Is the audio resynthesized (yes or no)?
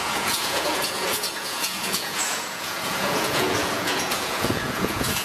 yes